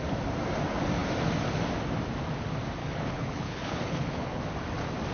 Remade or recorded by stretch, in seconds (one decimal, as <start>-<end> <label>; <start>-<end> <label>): 0.0-2.8 recorded; 2.8-4.4 remade; 4.4-5.1 recorded